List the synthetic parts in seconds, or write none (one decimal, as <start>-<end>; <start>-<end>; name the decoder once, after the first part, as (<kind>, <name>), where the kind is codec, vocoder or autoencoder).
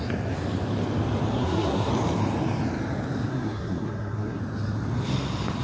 1.3-1.9 (codec, SNAC); 3.3-4.4